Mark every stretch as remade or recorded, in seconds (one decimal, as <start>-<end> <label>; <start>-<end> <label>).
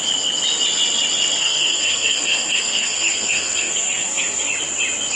0.0-1.4 recorded; 1.4-4.5 remade; 4.5-5.2 recorded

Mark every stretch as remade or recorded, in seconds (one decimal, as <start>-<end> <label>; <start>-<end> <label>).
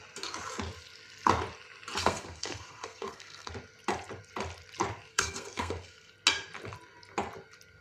0.0-2.0 recorded; 2.0-3.5 remade; 3.5-5.1 recorded; 5.1-6.1 remade; 6.1-7.8 recorded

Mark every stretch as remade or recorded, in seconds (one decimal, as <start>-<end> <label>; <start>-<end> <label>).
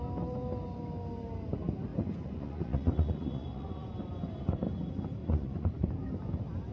0.0-1.9 recorded; 1.9-3.9 remade; 3.9-5.2 recorded; 5.2-5.9 remade; 5.9-6.7 recorded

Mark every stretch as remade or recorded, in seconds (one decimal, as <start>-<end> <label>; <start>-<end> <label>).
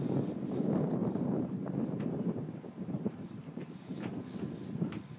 0.0-1.0 recorded; 1.0-4.0 remade; 4.0-5.2 recorded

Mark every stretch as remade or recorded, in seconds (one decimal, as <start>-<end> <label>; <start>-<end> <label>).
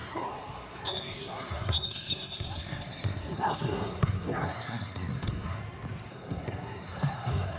0.0-5.6 remade; 5.6-6.1 recorded; 6.1-7.6 remade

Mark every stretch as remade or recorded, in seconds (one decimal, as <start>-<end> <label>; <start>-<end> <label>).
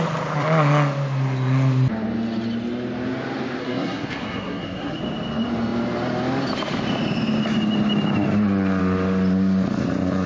0.0-3.6 recorded; 3.6-5.0 remade; 5.0-10.3 recorded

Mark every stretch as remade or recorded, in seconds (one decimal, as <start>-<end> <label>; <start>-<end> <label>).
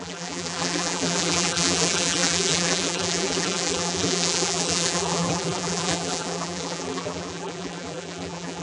0.0-8.6 remade